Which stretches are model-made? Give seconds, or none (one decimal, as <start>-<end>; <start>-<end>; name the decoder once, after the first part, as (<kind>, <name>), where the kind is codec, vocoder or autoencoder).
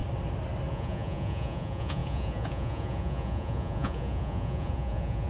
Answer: 0.7-5.3 (vocoder, Vocos)